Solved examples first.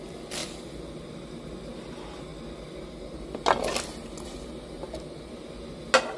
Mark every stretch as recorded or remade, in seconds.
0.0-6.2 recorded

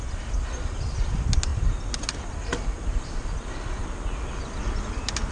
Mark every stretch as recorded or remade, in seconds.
0.0-5.3 recorded

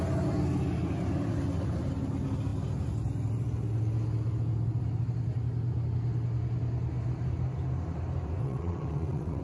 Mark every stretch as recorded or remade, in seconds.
0.0-8.4 recorded; 8.4-9.4 remade

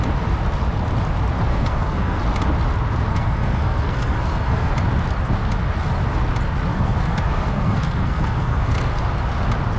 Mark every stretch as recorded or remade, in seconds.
0.0-1.5 recorded; 1.5-2.2 remade; 2.2-3.1 recorded; 3.1-4.7 remade; 4.7-6.7 recorded; 6.7-9.0 remade; 9.0-9.8 recorded

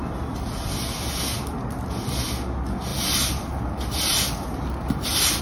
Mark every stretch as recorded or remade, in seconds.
0.0-2.9 recorded; 2.9-5.4 remade

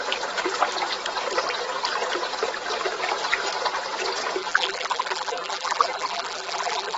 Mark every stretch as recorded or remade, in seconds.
0.0-4.4 recorded; 4.4-7.0 remade